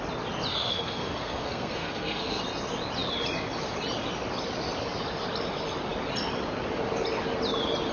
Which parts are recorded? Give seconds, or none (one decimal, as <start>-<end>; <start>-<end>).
0.0-0.5; 2.4-7.9